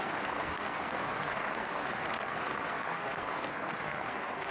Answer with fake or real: fake